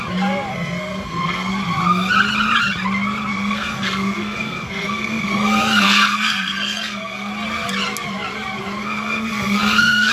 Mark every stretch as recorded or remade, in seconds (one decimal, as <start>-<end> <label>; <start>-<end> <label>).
0.0-0.5 recorded; 0.5-1.5 remade; 1.5-3.3 recorded; 3.3-7.3 remade; 7.3-8.8 recorded; 8.8-10.1 remade